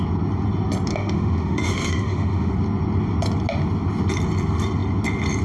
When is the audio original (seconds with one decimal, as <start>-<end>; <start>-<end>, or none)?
0.0-0.9; 2.5-5.4